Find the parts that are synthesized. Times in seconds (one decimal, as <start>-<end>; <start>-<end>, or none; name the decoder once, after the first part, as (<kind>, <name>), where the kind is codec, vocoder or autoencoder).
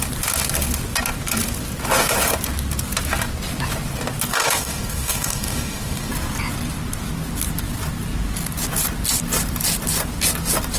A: 4.3-6.1 (codec, DAC)